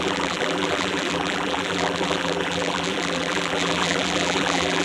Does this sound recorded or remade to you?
remade